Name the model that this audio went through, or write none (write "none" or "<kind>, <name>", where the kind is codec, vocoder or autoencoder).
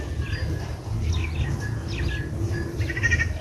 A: none